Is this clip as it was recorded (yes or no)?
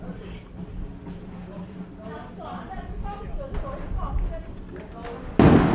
yes